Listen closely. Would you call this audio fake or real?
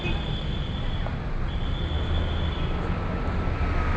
real